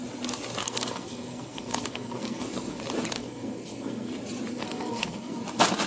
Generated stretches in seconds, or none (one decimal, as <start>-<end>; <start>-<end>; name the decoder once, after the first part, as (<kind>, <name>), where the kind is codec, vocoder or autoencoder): 0.6-2.8 (codec, SNAC); 3.2-4.1; 4.5-5.4